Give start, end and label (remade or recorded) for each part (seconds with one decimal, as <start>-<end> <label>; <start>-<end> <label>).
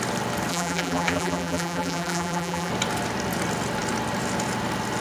0.0-0.5 recorded; 0.5-2.7 remade; 2.7-5.0 recorded